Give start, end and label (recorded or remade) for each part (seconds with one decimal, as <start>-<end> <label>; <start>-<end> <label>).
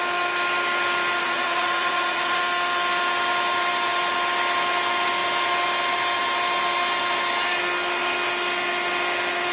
0.0-1.2 recorded; 1.2-2.4 remade; 2.4-9.5 recorded